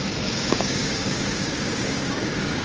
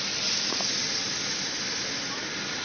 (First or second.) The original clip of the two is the second